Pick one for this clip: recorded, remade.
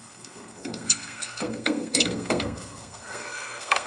remade